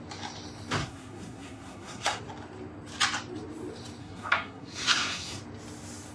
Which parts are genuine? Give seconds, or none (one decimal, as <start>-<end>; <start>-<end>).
0.0-0.8; 2.2-4.0; 5.4-6.1